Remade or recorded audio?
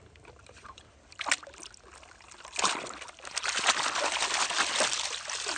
recorded